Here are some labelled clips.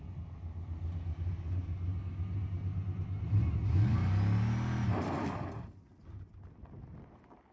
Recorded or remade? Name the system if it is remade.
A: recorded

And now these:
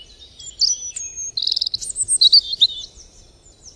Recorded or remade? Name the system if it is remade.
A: recorded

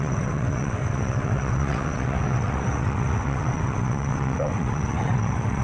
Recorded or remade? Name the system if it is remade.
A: remade, vocoder, WaveNeXt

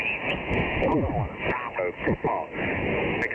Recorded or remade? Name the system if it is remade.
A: remade, autoencoder, DAC-VAE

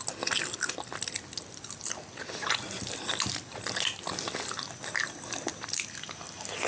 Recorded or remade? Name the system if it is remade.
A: recorded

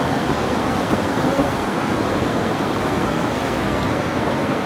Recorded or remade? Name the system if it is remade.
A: remade, codec, SNAC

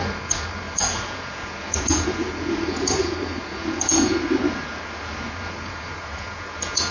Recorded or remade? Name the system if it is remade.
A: remade, vocoder, Vocos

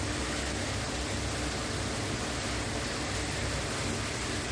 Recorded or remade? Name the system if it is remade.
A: recorded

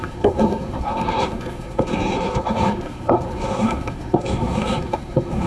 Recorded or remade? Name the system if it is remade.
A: remade, codec, SNAC